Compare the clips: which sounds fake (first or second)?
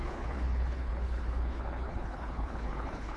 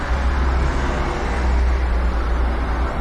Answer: first